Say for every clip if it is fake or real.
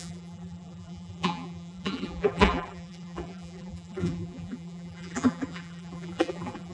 fake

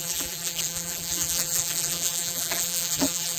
fake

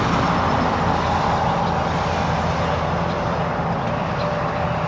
real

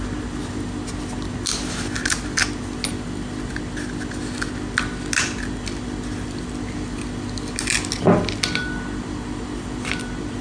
real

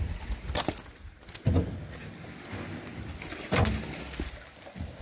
real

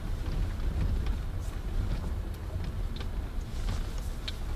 real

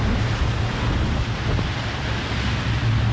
real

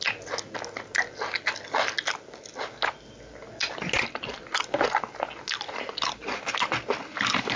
real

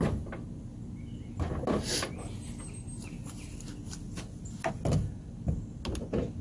real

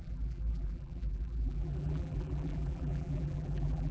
fake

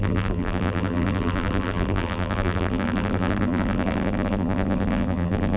fake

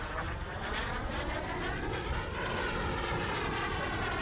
real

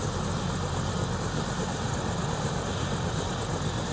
real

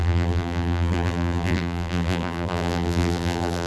fake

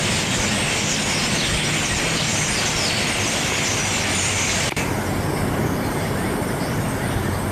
real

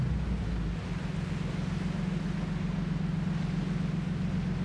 real